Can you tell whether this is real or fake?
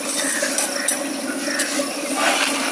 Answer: real